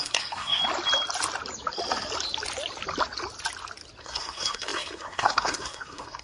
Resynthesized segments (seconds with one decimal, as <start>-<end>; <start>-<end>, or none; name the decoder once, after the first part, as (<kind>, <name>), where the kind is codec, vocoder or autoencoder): 0.0-0.6 (codec, SNAC); 4.0-6.2